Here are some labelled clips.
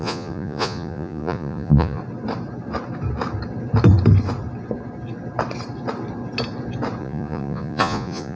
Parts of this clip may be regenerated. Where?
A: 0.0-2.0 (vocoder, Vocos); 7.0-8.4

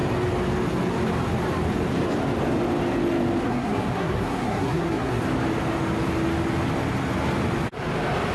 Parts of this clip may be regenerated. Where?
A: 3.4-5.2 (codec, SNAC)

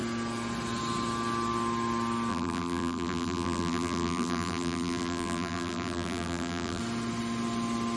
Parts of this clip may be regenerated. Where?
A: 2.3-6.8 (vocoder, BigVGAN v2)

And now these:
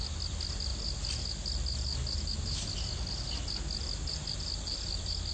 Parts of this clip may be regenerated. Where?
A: 0.0-0.7 (vocoder, BigVGAN v2); 3.9-5.3